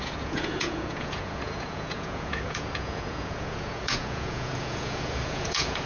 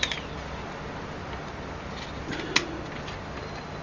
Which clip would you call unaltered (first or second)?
second